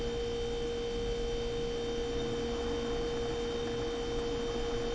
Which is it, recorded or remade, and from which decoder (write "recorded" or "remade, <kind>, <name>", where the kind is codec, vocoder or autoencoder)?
recorded